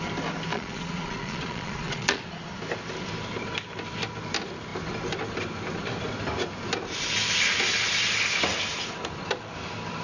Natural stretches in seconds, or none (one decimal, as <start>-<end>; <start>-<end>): 0.0-0.5; 2.2-10.0